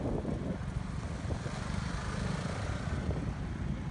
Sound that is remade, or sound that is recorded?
recorded